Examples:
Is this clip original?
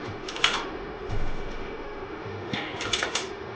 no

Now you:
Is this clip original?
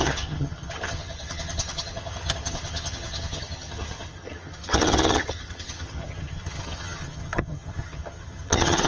no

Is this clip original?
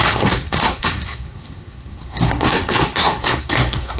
no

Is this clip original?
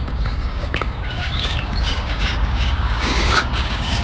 no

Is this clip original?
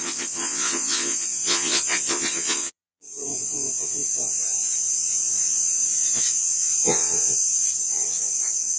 no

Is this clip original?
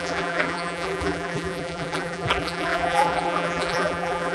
no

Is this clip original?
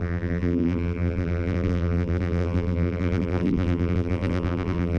no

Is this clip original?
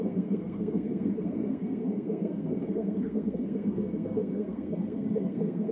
no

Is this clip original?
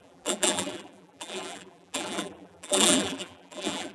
no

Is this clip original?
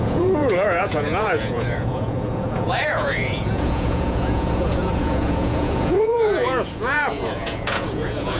no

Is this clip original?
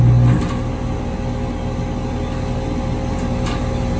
yes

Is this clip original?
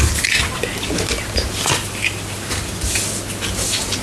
yes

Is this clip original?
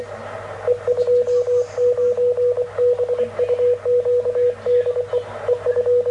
yes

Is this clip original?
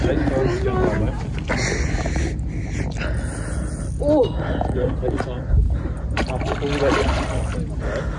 yes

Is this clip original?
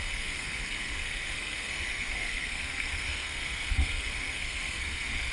no